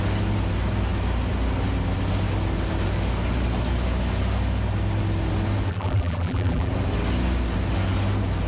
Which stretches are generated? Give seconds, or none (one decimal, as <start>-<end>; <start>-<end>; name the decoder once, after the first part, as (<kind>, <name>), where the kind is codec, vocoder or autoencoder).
5.7-6.7 (vocoder, BigVGAN v2)